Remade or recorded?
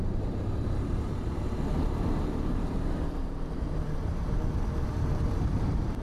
remade